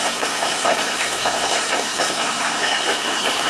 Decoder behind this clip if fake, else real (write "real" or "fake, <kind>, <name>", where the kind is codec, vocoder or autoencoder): fake, codec, SNAC